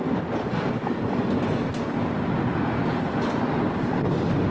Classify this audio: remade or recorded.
recorded